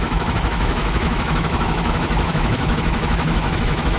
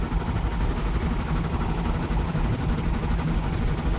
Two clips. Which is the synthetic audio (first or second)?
first